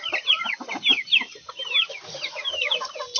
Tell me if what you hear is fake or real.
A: real